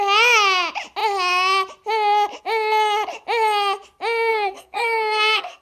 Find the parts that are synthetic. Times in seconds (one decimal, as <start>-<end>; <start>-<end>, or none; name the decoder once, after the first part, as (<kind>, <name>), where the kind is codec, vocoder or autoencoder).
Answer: 4.3-5.6 (codec, SNAC)